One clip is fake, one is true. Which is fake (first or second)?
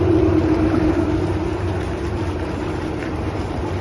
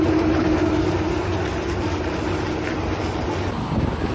first